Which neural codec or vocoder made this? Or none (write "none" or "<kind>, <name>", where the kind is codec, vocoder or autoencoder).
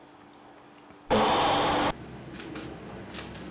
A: none